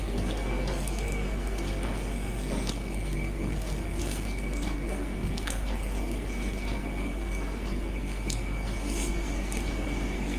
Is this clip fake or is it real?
fake